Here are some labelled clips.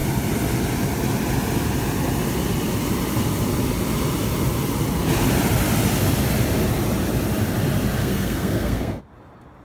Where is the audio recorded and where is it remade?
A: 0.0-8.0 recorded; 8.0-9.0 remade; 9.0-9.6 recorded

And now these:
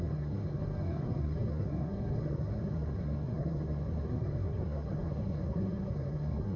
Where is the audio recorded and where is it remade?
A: 0.0-6.6 remade

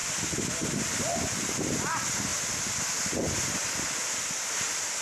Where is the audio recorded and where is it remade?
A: 0.0-5.0 recorded

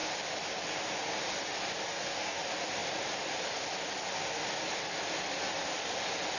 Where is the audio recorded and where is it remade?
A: 0.0-1.9 recorded; 1.9-2.4 remade; 2.4-6.4 recorded